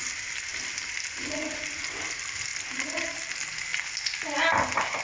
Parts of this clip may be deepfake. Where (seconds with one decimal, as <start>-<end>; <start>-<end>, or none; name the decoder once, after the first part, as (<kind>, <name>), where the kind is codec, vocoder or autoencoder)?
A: none